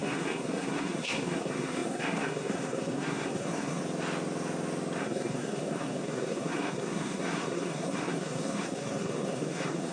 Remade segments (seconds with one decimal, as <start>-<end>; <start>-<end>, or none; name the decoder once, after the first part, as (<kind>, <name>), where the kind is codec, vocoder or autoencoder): 0.0-3.8 (codec, SNAC); 5.0-9.9